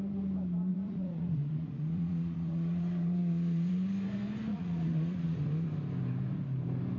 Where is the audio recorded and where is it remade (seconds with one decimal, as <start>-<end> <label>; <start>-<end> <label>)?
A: 0.0-0.7 recorded; 0.7-3.7 remade; 3.7-4.5 recorded; 4.5-5.4 remade; 5.4-7.0 recorded